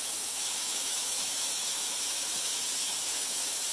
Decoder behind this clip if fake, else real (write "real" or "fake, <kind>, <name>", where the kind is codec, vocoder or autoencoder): fake, autoencoder, DAC-VAE